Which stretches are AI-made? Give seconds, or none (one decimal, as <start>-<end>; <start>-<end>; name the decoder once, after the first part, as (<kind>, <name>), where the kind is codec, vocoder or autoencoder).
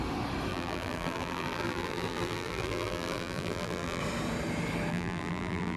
0.5-4.0 (vocoder, BigVGAN v2); 4.9-5.8